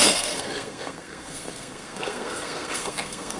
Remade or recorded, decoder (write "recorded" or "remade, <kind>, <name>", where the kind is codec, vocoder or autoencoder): remade, codec, SNAC